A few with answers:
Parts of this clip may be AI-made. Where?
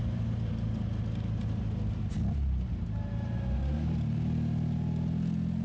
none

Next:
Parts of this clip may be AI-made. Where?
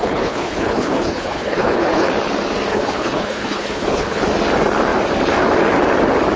0.0-2.1 (codec, HILCodec); 2.7-4.3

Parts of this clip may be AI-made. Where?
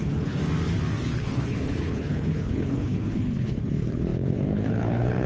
0.0-0.4 (codec, HILCodec); 1.0-5.3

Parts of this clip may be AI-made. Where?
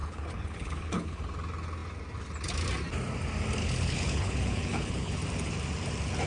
0.0-1.2 (codec, HILCodec); 3.6-5.2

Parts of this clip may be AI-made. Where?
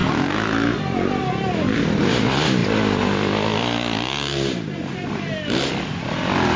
0.0-0.7 (autoencoder, DAC-VAE)